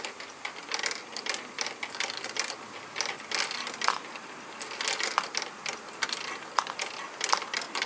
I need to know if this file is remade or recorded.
recorded